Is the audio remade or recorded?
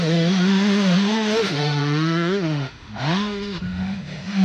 remade